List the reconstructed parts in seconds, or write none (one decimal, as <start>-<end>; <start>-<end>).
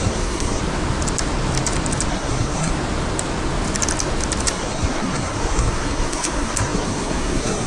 0.0-0.6; 2.1-2.7; 4.5-7.7